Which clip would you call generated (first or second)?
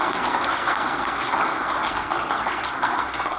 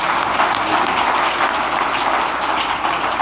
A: first